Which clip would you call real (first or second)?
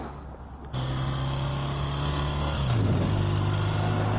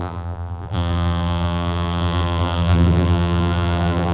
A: first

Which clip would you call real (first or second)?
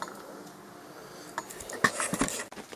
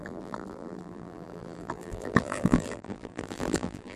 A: first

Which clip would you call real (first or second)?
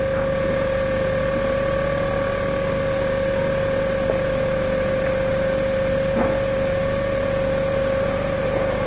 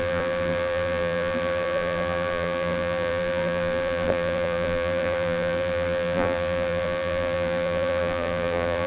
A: first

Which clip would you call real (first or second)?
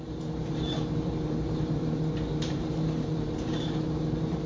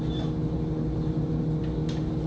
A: second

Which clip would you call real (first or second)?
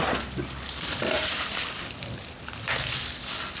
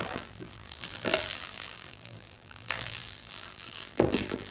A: first